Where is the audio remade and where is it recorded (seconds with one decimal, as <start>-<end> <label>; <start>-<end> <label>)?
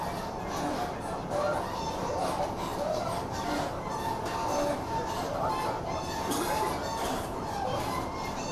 0.0-2.7 recorded; 2.7-3.5 remade; 3.5-7.0 recorded; 7.0-8.0 remade; 8.0-8.5 recorded